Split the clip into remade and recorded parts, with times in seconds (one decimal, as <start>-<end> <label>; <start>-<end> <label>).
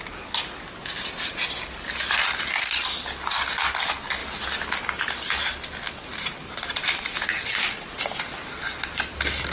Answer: 0.0-6.1 recorded; 6.1-7.0 remade; 7.0-9.5 recorded